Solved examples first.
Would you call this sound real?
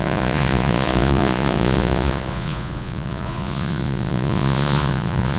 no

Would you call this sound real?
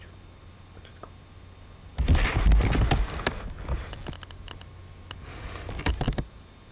yes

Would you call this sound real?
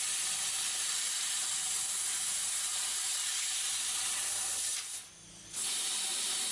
yes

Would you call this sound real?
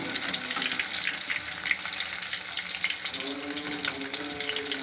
yes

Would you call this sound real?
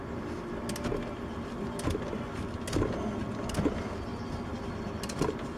yes